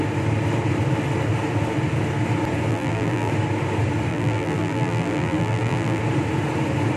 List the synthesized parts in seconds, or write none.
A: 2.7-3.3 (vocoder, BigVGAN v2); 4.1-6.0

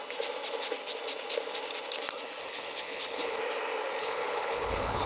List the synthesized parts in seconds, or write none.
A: 2.4-3.4 (codec, HILCodec); 4.0-5.1